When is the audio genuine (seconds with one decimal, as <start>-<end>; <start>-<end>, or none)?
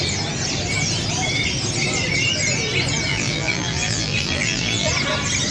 0.0-3.1; 4.9-5.5